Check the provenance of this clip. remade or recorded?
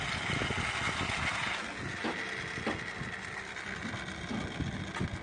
recorded